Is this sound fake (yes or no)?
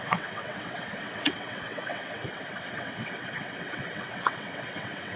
yes